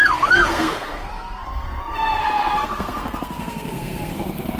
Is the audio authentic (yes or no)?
no